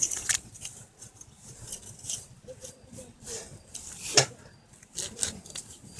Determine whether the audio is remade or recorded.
recorded